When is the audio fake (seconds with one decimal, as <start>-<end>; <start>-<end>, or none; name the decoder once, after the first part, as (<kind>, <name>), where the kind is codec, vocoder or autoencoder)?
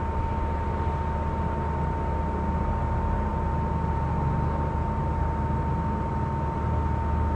none